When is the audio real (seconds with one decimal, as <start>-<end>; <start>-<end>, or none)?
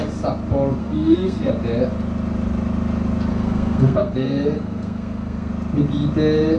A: 0.0-0.8; 1.5-3.3; 5.5-6.6